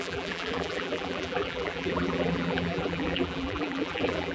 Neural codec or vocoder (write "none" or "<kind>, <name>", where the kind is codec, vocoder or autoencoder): vocoder, BigVGAN v2